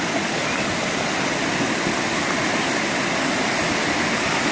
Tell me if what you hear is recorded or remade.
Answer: recorded